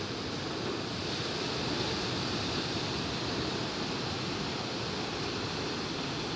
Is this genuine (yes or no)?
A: yes